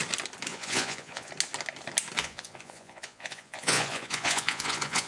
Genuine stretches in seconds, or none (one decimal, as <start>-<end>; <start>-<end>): 0.0-0.5; 1.3-2.2